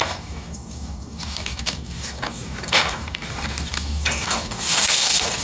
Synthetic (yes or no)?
yes